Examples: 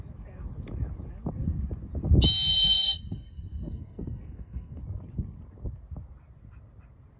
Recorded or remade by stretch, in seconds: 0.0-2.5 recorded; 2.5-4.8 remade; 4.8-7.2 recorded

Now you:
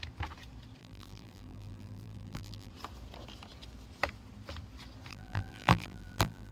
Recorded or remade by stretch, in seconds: 0.0-0.8 recorded; 0.8-2.7 remade; 2.7-5.1 recorded; 5.1-6.5 remade

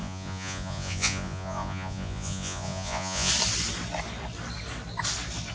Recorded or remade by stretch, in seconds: 0.0-3.3 remade; 3.3-5.5 recorded

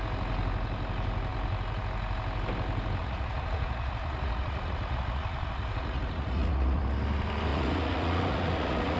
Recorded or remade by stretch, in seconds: 0.0-3.0 recorded; 3.0-6.8 remade; 6.8-7.5 recorded; 7.5-9.0 remade

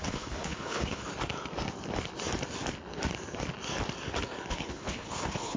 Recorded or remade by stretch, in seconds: 0.0-1.1 remade; 1.1-4.5 recorded; 4.5-5.6 remade

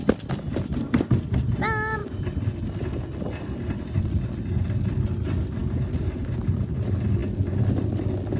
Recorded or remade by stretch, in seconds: 0.0-8.4 recorded

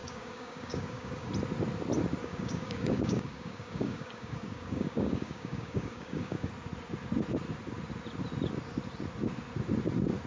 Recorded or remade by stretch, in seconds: 0.0-1.3 remade; 1.3-2.2 recorded; 2.2-6.5 remade; 6.5-10.3 recorded